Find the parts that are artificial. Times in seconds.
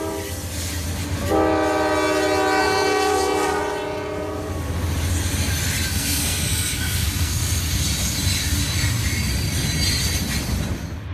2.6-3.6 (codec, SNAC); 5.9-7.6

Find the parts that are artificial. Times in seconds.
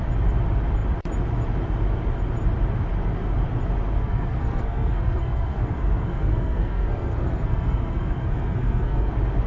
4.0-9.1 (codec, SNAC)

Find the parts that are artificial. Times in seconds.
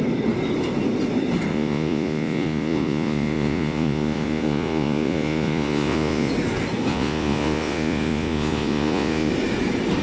1.5-6.3 (vocoder, Vocos); 6.9-9.3